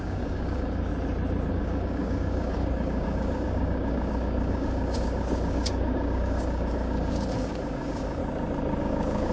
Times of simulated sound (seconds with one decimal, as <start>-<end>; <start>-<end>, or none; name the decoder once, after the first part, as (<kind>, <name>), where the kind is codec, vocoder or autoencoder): 0.0-0.9 (codec, DAC); 1.5-8.2; 8.8-9.3